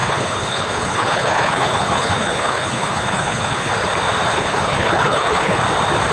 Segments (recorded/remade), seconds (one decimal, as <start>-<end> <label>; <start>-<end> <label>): 0.0-3.7 remade; 3.7-4.3 recorded; 4.3-5.6 remade; 5.6-6.1 recorded